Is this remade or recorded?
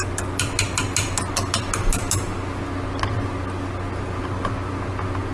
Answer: recorded